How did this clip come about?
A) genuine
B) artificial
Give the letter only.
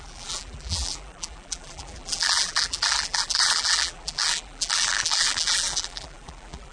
B